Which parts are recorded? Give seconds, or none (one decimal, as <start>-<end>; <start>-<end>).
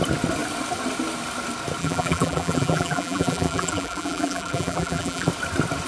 0.0-1.8; 5.3-5.9